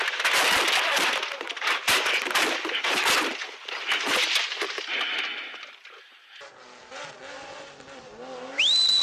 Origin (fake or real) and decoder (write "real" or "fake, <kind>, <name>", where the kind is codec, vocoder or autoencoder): real